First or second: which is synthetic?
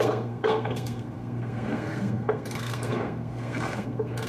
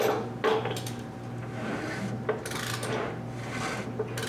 first